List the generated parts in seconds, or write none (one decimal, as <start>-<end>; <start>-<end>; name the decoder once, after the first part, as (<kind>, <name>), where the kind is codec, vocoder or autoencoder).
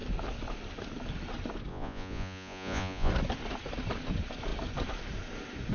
1.7-3.1 (vocoder, Vocos)